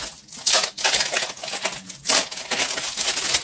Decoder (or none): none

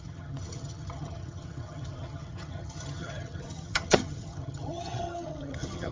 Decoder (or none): vocoder, HiFi-GAN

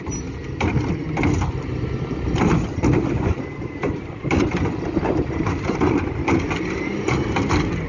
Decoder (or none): none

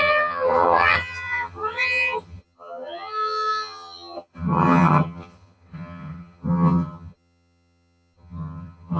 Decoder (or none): vocoder, HiFi-GAN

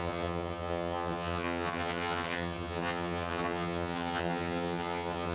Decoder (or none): vocoder, HiFi-GAN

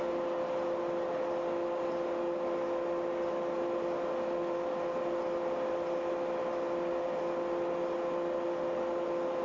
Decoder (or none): none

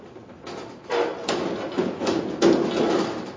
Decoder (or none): none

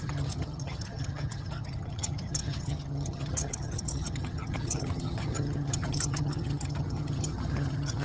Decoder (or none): vocoder, HiFi-GAN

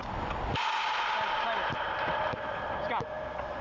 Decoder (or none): none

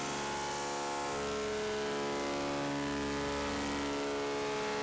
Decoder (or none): none